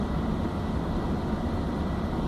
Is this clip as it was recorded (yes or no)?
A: yes